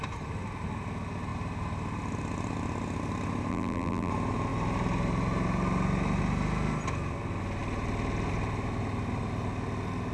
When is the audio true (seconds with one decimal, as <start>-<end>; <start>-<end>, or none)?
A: 0.0-3.5; 4.1-10.1